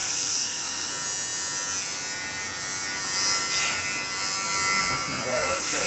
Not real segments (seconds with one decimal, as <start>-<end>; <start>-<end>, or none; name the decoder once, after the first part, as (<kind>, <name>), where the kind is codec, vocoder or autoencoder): 0.0-0.9 (codec, SNAC); 5.3-5.9

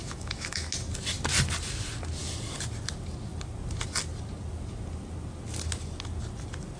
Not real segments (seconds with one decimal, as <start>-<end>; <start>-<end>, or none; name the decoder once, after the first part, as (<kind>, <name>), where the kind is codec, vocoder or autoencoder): 0.0-0.7 (autoencoder, DAC-VAE)

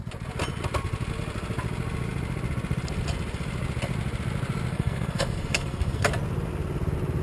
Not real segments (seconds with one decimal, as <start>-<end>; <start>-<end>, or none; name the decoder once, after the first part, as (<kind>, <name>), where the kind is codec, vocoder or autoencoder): 4.7-6.1 (codec, SNAC)

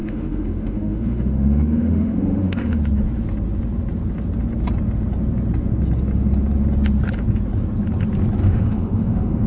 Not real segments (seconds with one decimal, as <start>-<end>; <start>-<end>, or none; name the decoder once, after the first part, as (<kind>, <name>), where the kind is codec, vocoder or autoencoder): 0.0-2.8 (autoencoder, DAC-VAE); 8.4-9.5

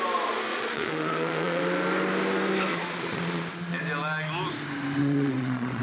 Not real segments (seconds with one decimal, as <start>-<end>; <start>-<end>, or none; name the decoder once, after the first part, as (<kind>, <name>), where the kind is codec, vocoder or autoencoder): 0.5-1.6 (vocoder, Vocos); 2.7-3.8; 5.0-5.8

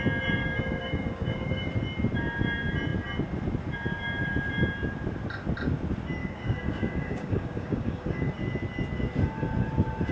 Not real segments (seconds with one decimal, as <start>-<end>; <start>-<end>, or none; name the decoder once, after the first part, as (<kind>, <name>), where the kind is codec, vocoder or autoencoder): 0.4-1.7 (codec, DAC); 6.2-8.3

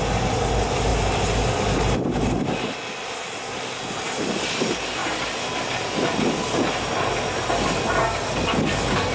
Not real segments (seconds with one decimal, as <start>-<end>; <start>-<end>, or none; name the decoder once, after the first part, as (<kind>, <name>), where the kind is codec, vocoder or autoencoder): 5.0-6.6 (vocoder, BigVGAN v2)